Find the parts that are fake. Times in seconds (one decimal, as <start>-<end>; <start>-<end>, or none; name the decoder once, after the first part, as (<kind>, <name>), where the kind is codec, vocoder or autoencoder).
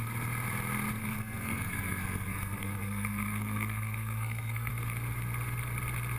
1.0-4.7 (codec, SNAC)